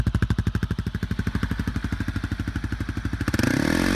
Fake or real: real